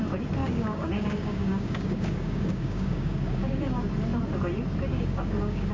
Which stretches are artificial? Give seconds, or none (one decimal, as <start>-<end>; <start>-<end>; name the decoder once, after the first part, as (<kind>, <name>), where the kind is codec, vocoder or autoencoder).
0.4-3.8 (codec, DAC); 4.9-5.7